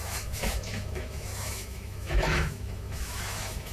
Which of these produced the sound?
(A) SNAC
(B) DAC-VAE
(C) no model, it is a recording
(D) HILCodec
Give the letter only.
B